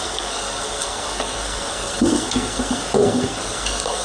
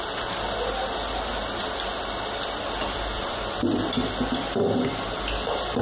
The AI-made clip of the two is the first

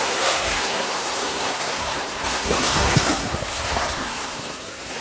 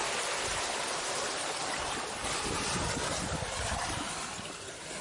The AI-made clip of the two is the first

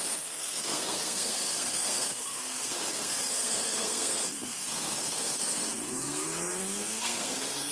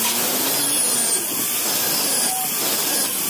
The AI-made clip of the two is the first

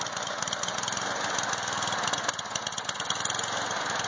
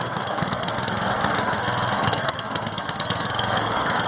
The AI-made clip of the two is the second